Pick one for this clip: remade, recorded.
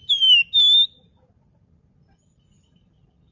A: recorded